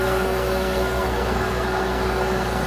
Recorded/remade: remade